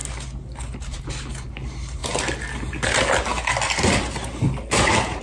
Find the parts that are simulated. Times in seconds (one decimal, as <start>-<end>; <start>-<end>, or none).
none